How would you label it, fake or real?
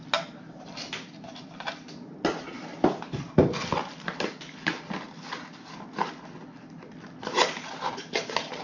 real